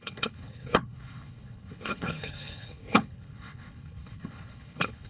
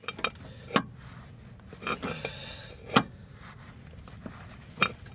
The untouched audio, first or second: second